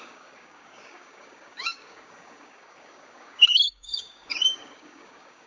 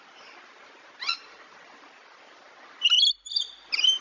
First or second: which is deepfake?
first